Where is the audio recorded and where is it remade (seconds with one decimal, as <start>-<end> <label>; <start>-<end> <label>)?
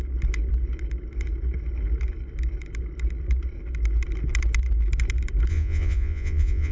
0.0-5.5 recorded; 5.5-6.7 remade